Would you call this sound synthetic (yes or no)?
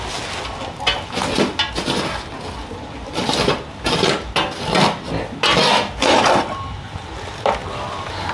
no